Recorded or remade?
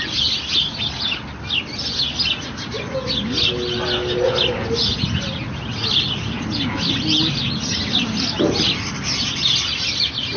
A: recorded